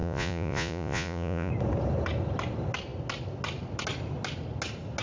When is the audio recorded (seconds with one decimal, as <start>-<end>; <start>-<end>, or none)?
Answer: 1.5-5.0